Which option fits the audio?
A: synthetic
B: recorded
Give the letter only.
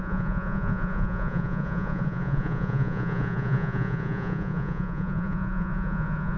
A